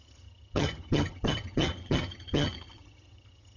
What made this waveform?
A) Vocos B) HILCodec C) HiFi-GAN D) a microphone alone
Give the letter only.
C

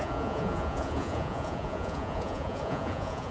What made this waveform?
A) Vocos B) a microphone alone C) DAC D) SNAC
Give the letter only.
A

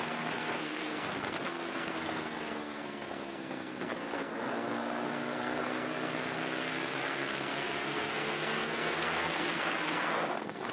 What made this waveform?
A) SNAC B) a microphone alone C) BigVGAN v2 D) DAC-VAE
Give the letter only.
A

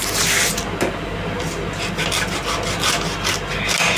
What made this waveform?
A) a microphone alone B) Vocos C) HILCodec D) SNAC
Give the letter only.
A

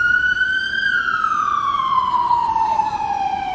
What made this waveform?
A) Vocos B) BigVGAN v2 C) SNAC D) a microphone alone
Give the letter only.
B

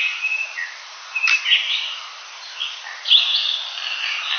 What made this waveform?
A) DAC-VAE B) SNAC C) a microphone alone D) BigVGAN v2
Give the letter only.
C